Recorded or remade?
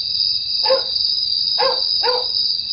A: recorded